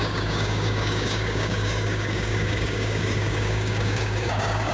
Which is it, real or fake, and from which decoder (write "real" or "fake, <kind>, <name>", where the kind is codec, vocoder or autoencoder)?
fake, codec, DAC